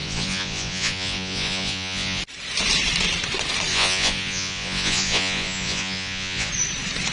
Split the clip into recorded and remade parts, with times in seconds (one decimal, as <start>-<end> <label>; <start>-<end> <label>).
0.0-2.2 remade; 2.2-3.7 recorded; 3.7-6.5 remade; 6.5-7.1 recorded